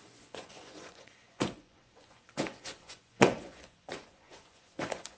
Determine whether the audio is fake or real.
fake